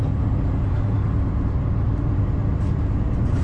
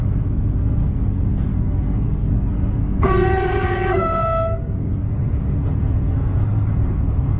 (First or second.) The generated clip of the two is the second